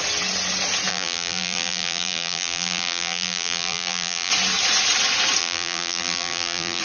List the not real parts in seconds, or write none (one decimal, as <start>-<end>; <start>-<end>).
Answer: 0.9-4.3; 5.4-6.8

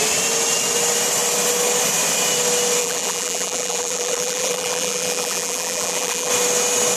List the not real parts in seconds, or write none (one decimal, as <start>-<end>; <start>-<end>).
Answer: 2.8-6.3

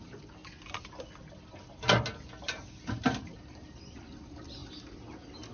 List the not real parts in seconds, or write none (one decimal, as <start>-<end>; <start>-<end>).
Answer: none

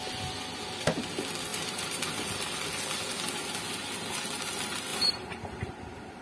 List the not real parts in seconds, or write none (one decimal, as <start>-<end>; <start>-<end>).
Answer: 1.5-2.2; 4.9-5.7